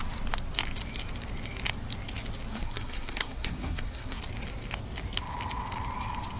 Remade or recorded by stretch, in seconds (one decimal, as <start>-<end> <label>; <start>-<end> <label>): 0.0-2.5 recorded; 2.5-4.2 remade; 4.2-6.4 recorded